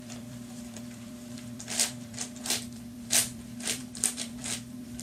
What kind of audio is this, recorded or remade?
remade